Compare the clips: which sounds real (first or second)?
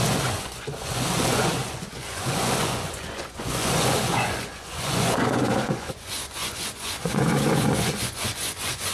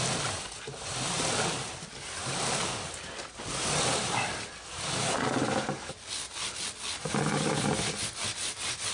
second